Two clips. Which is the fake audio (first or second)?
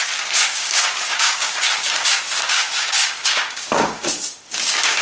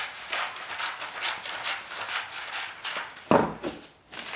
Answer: first